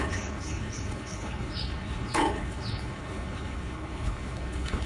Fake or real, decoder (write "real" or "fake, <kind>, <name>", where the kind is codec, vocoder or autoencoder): fake, codec, HILCodec